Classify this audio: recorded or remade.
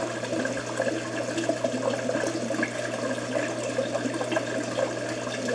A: recorded